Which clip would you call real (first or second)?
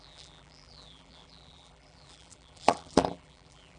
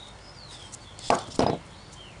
second